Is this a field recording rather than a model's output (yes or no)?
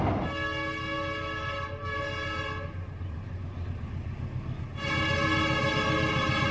yes